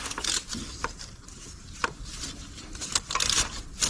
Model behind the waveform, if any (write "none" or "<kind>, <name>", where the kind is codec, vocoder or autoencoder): none